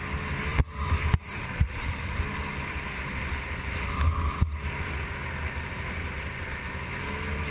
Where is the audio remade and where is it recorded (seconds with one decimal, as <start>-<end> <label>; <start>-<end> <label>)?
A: 0.0-0.5 recorded; 0.5-2.2 remade; 2.2-7.5 recorded

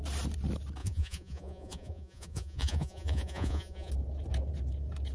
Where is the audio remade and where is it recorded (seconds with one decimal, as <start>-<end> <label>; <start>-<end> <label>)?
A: 0.0-0.8 recorded; 0.8-3.9 remade; 3.9-5.1 recorded

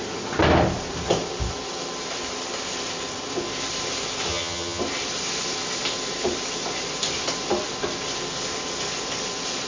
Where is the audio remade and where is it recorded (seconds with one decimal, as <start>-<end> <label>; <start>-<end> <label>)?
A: 0.0-4.3 recorded; 4.3-4.8 remade; 4.8-9.7 recorded